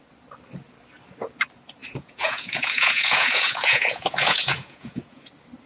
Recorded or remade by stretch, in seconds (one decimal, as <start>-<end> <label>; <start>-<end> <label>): 0.0-1.8 recorded; 1.8-5.2 remade; 5.2-5.7 recorded